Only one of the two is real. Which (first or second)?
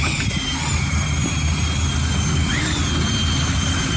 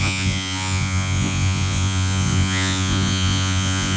first